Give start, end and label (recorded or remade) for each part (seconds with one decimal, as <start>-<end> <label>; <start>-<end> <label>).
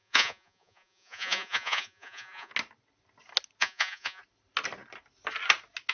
0.0-2.5 remade; 2.5-3.6 recorded; 3.6-4.2 remade; 4.2-5.9 recorded